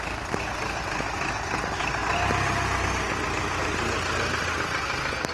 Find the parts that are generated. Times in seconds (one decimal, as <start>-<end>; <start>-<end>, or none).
none